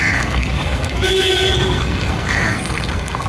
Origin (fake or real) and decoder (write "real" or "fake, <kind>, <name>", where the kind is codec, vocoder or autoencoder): fake, codec, SNAC